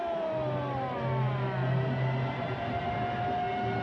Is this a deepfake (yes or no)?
no